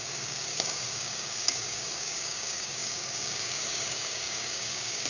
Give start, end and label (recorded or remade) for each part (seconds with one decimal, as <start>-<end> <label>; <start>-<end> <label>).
0.0-5.1 remade